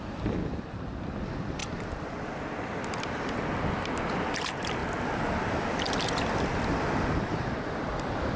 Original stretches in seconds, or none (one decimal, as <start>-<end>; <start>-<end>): 0.0-0.4; 1.0-7.3; 7.9-8.4